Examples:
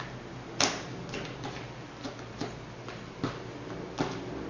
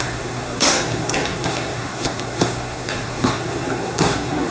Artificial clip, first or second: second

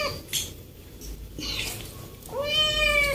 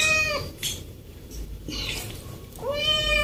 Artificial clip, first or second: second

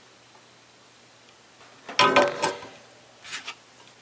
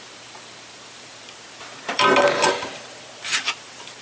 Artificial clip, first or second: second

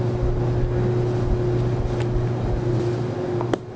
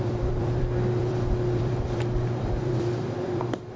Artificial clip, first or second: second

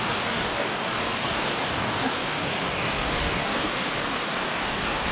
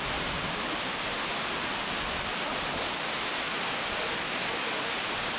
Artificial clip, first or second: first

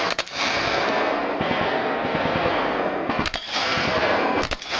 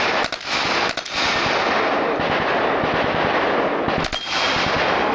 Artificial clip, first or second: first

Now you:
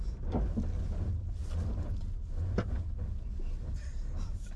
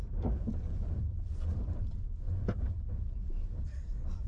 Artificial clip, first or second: second